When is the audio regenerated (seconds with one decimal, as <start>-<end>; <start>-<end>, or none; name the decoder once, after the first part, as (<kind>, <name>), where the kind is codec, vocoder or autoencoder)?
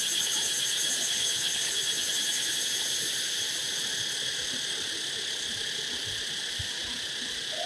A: 1.1-1.7 (codec, HILCodec)